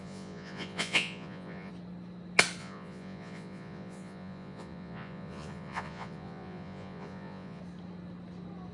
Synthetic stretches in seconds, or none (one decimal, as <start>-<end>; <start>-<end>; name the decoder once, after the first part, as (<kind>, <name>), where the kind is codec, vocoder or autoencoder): 0.0-1.7 (vocoder, Vocos); 2.6-7.6